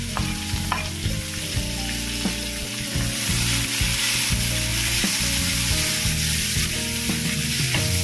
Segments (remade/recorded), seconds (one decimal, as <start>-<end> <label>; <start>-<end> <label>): 0.0-2.6 recorded; 2.6-4.0 remade; 4.0-4.7 recorded; 4.7-5.5 remade; 5.5-8.0 recorded